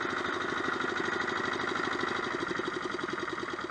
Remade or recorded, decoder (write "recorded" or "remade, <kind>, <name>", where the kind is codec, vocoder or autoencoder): recorded